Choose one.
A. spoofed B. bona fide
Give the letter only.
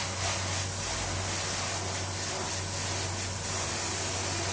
B